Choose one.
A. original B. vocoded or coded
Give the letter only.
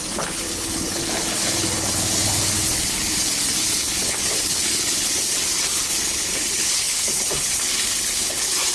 B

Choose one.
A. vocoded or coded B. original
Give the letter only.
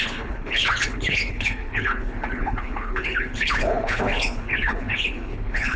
A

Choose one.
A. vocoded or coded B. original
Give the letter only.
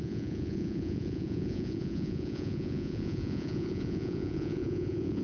A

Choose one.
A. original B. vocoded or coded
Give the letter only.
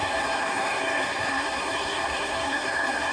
B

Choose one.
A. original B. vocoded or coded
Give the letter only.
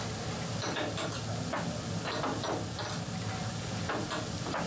A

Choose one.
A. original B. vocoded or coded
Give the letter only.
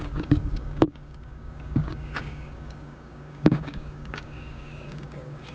B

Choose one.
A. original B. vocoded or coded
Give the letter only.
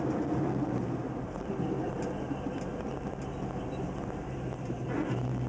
A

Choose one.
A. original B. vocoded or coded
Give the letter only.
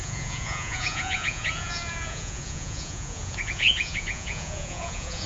B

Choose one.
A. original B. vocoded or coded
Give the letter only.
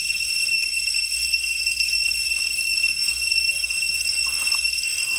B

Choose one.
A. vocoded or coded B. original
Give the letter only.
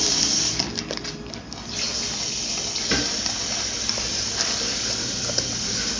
B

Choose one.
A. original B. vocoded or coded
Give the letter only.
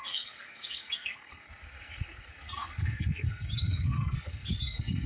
B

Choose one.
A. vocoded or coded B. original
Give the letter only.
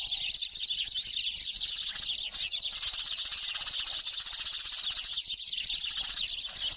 B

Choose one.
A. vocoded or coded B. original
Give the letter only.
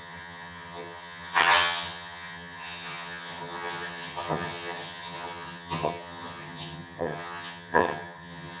A